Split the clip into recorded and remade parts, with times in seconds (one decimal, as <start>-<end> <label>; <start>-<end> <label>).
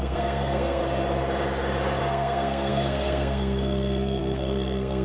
0.0-0.8 remade; 0.8-2.0 recorded; 2.0-5.0 remade